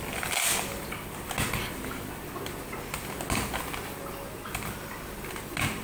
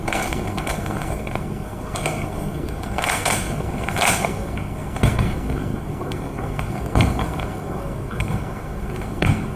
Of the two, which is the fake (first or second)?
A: second